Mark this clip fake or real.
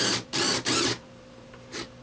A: fake